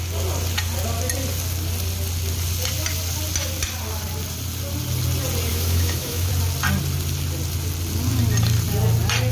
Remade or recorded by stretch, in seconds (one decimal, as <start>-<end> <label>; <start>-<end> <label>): 0.0-5.5 recorded; 5.5-6.3 remade; 6.3-9.3 recorded